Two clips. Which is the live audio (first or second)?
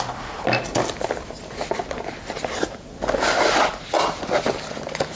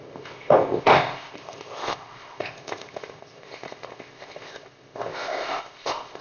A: first